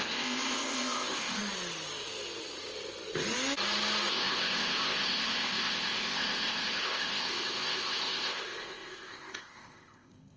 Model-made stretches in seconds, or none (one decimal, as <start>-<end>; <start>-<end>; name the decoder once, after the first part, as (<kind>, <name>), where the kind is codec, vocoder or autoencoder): 0.0-1.4 (codec, ZipCodec); 4.1-10.4